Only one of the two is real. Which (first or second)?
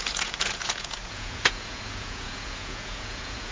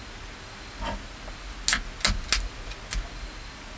second